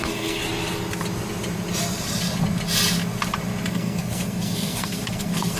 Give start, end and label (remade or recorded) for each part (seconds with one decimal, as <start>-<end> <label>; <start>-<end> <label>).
0.0-0.4 remade; 0.4-3.7 recorded; 3.7-5.6 remade